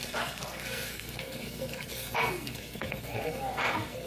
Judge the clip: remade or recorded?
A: remade